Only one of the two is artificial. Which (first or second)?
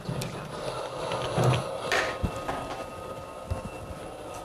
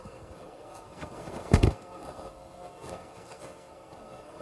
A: second